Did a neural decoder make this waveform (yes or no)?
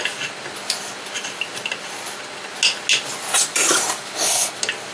no